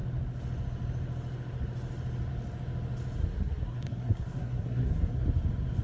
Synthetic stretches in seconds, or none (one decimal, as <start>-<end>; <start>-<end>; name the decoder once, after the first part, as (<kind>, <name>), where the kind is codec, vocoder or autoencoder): 3.2-5.2 (codec, SNAC)